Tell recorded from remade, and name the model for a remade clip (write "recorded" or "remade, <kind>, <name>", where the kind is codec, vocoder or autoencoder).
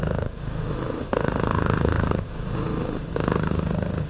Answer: remade, autoencoder, DAC-VAE